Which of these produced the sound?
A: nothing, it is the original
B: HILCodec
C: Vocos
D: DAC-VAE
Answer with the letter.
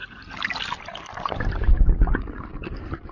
A